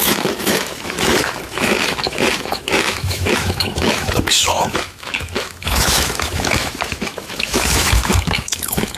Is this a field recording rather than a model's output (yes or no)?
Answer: no